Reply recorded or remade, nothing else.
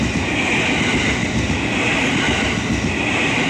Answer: recorded